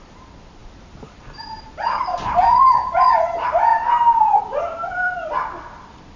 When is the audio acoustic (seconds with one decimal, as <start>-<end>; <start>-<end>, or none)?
0.6-2.0